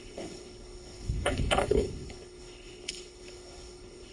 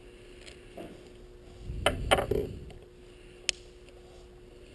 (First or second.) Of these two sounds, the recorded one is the second